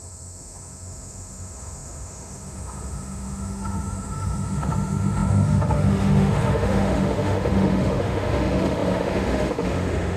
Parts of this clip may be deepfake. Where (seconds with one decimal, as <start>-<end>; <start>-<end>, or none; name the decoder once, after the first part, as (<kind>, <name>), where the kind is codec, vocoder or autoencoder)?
0.0-10.2 (autoencoder, DAC-VAE)